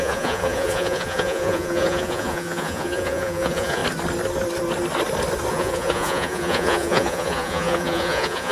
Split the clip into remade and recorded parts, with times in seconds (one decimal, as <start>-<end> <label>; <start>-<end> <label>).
0.0-3.8 remade; 3.8-5.5 recorded; 5.5-8.5 remade

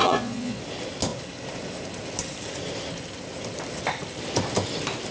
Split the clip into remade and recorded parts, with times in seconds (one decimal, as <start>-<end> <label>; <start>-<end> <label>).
0.0-0.6 remade; 0.6-5.1 recorded